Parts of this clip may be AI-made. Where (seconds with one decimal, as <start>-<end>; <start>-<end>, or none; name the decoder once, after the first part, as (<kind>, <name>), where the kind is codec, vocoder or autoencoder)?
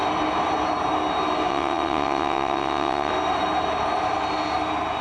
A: 1.5-3.1 (vocoder, WaveNeXt)